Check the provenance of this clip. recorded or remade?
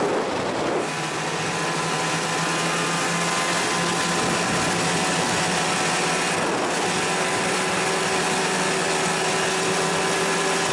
recorded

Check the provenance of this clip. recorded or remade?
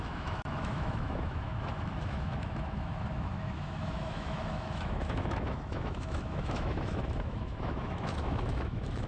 remade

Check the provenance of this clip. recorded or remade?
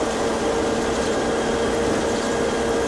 recorded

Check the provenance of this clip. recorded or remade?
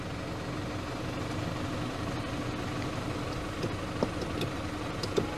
recorded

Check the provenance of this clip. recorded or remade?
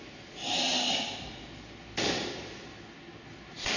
recorded